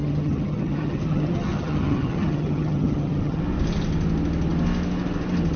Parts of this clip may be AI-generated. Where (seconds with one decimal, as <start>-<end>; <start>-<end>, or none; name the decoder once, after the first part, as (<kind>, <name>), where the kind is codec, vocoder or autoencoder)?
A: 0.0-3.4 (vocoder, HiFi-GAN)

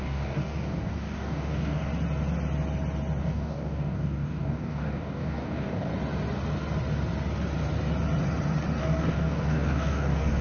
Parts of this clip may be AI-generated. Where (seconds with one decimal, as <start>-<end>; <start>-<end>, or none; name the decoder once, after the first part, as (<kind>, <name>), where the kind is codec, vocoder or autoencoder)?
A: 0.0-1.9 (codec, DAC); 3.2-5.9; 8.8-10.4

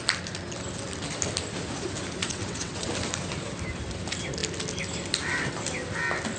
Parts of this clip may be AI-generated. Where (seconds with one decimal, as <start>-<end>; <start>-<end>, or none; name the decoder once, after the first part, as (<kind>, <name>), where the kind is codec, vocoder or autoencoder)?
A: 2.2-2.9 (vocoder, WaveNeXt)

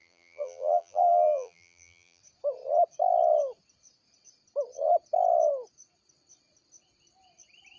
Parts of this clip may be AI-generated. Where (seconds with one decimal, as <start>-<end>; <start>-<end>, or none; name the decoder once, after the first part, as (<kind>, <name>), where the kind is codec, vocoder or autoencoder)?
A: 0.0-2.2 (vocoder, BigVGAN v2)

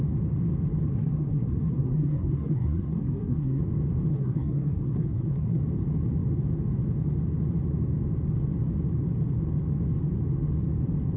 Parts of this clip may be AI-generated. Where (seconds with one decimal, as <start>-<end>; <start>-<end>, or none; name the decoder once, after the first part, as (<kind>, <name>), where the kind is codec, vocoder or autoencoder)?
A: 0.9-3.6 (codec, SNAC); 4.1-5.6

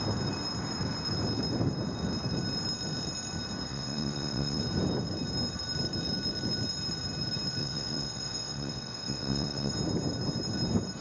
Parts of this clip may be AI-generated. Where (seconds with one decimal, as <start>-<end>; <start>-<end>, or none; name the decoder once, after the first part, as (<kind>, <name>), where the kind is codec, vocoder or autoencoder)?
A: 3.7-4.6 (vocoder, WaveNeXt); 7.6-9.7

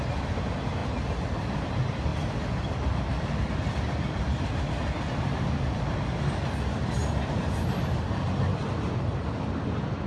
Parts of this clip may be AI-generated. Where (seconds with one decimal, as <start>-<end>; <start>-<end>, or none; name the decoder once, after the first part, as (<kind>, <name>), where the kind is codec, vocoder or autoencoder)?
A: none

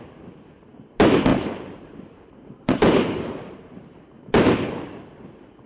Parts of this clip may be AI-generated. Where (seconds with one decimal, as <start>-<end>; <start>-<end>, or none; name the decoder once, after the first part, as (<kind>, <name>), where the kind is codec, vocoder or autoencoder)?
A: 1.3-4.7 (vocoder, BigVGAN v2)